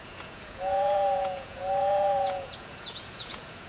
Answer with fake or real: fake